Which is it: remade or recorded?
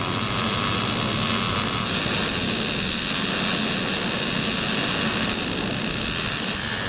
recorded